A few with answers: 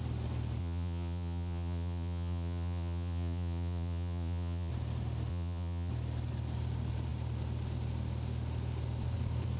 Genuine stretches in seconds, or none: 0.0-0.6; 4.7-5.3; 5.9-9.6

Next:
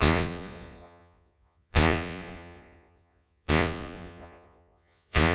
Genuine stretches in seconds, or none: none

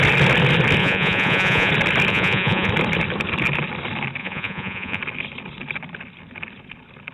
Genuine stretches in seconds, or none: 0.0-0.8; 1.7-2.1; 2.7-4.2; 5.0-7.1

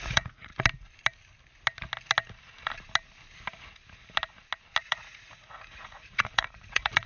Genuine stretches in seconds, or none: 0.5-4.8